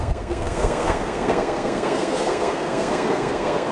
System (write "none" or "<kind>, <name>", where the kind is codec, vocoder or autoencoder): codec, SNAC